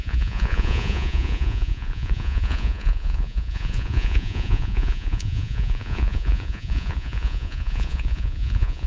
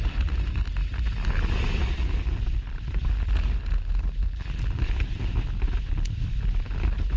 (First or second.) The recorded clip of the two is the second